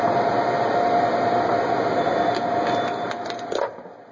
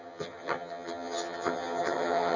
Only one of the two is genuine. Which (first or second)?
first